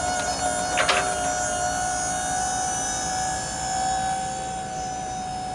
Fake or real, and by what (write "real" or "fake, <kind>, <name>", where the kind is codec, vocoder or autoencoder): real